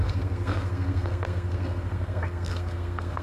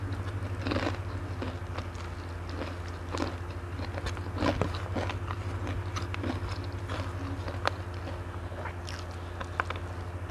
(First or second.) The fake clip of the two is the first